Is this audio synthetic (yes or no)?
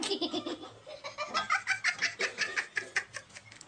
no